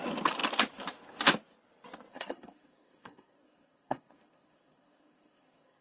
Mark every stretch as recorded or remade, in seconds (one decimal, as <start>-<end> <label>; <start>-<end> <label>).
0.0-2.1 recorded; 2.1-5.8 remade